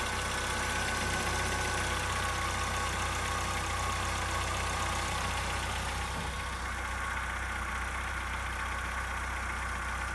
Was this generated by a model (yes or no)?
no